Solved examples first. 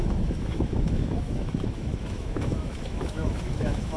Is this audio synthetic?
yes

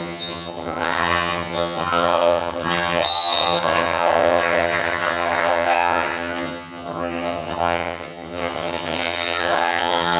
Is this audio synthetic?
yes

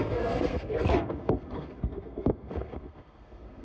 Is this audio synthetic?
yes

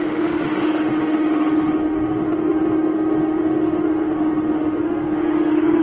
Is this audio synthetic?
yes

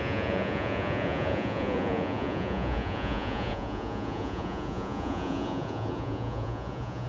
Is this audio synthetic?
yes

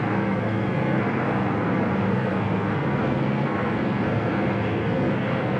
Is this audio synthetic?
yes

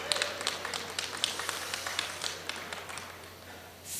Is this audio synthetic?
no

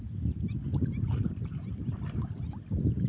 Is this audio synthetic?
no